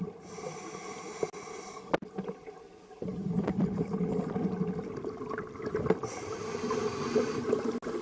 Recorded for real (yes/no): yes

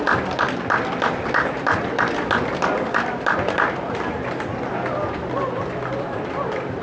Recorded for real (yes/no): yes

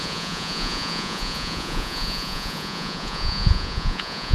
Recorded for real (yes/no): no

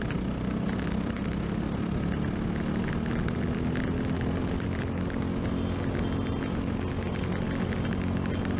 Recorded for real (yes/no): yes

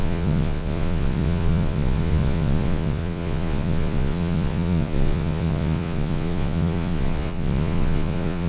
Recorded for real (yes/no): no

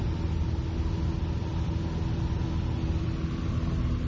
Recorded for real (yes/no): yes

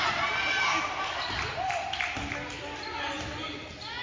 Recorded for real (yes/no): yes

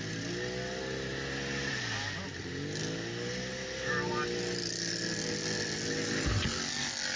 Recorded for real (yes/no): yes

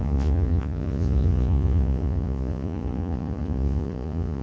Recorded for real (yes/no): no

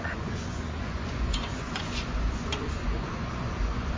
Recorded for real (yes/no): no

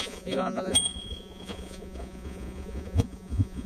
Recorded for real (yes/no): no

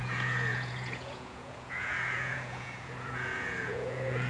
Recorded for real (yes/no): no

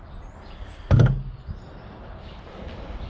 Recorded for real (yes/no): yes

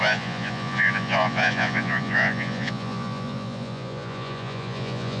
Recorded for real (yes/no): no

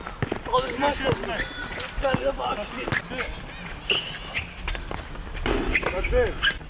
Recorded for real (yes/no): yes